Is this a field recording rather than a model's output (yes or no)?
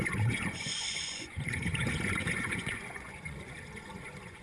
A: no